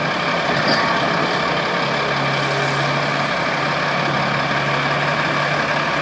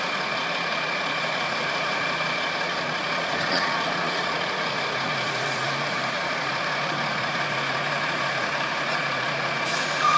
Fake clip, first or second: second